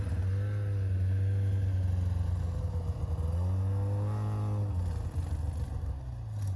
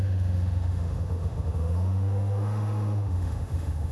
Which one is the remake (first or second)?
second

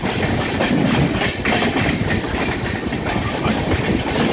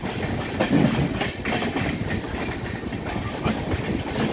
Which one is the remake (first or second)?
first